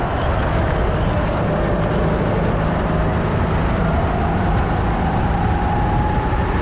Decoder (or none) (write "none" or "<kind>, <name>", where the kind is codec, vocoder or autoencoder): none